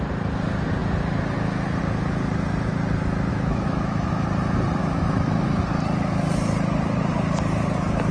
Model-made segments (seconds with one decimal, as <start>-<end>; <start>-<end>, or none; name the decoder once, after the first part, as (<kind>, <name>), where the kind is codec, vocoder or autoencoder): 3.3-4.1 (autoencoder, DAC-VAE); 4.8-5.6